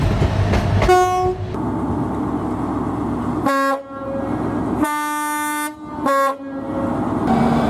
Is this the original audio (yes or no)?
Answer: yes